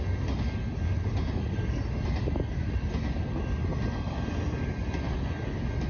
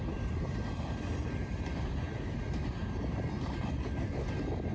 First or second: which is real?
first